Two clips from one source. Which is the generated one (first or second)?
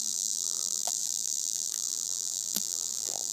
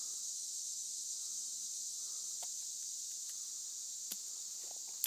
first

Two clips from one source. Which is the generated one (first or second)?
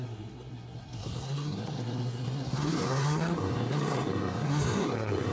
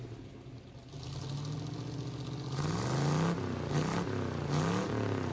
first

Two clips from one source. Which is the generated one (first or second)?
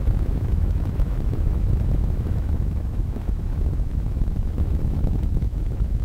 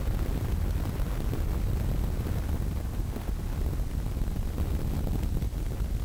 first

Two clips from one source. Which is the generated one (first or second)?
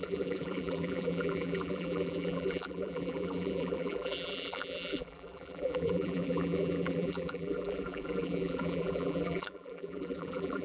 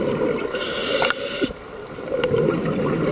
first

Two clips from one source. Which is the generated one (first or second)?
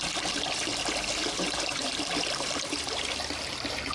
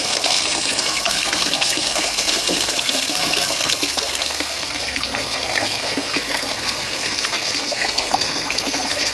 second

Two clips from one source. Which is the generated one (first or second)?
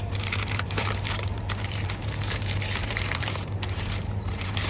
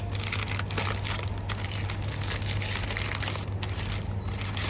first